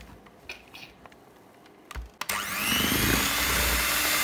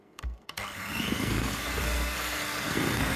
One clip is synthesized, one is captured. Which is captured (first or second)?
first